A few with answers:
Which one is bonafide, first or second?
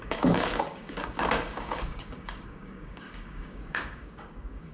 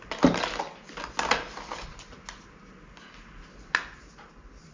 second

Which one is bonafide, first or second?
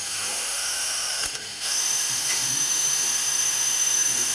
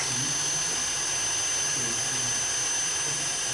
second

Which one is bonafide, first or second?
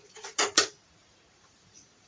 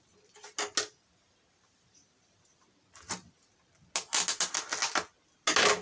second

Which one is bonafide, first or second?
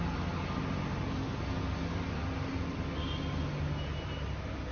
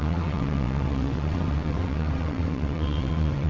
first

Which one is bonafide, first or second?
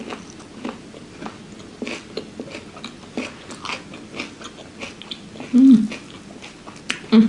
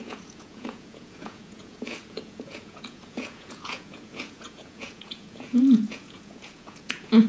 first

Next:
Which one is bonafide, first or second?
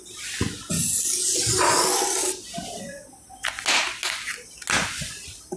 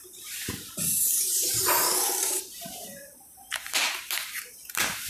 first